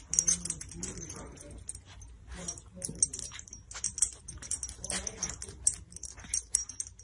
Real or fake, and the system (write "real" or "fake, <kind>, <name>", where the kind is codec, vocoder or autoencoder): real